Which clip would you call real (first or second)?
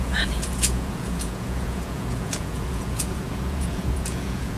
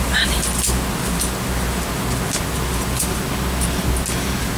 second